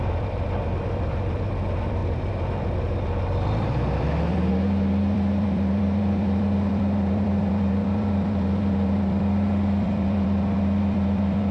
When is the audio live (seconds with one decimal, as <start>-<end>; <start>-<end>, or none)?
none